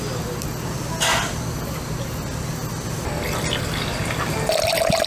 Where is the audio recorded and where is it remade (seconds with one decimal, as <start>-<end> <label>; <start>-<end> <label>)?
0.0-5.1 recorded